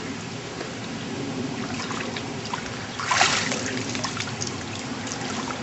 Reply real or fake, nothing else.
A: real